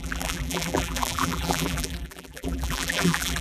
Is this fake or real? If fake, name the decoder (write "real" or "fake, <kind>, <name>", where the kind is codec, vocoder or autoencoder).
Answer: fake, vocoder, BigVGAN v2